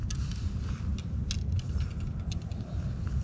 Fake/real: real